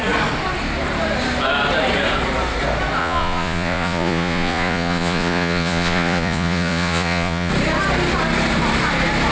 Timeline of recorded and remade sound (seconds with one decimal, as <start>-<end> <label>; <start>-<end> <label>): 0.0-3.0 recorded; 3.0-7.5 remade; 7.5-9.3 recorded